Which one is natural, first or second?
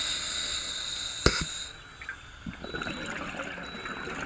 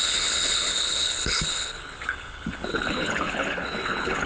first